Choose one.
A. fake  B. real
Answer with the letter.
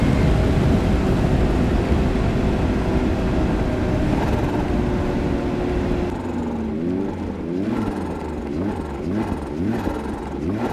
B